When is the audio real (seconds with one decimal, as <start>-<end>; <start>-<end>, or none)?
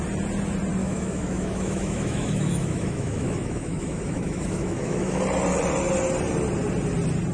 0.0-0.8; 5.2-7.3